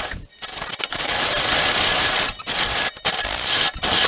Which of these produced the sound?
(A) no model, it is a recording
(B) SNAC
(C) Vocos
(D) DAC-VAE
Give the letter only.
A